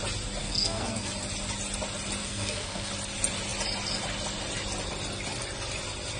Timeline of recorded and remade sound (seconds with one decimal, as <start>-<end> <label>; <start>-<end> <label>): 0.0-0.4 recorded; 0.4-1.1 remade; 1.1-2.2 recorded; 2.2-2.9 remade; 2.9-6.2 recorded